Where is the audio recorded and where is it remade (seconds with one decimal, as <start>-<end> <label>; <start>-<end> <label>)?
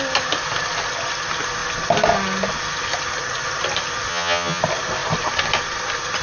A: 0.0-4.1 recorded; 4.1-4.6 remade; 4.6-6.2 recorded